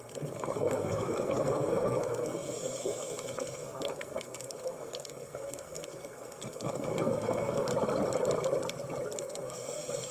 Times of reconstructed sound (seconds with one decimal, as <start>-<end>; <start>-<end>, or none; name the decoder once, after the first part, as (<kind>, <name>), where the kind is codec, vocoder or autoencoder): 0.0-7.7 (codec, SNAC); 9.2-10.1